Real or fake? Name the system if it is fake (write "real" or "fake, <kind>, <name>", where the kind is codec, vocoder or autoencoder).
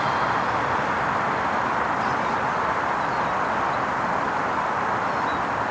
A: real